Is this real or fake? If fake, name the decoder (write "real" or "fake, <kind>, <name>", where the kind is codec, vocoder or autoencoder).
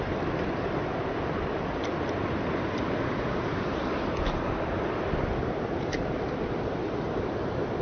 fake, vocoder, BigVGAN v2